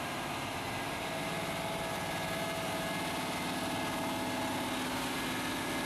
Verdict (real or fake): real